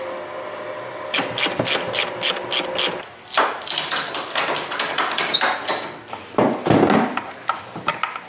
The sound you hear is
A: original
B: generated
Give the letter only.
A